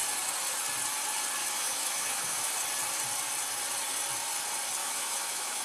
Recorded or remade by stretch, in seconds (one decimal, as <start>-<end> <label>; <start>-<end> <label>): 0.0-1.4 recorded; 1.4-2.5 remade; 2.5-4.8 recorded; 4.8-5.6 remade